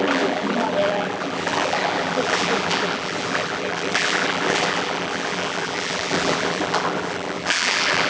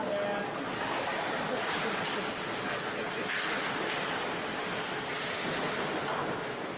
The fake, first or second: first